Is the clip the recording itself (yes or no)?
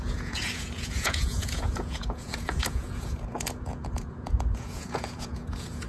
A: no